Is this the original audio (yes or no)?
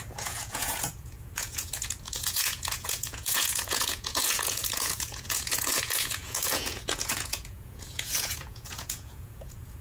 no